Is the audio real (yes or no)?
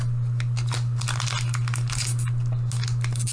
yes